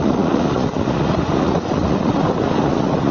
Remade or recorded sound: remade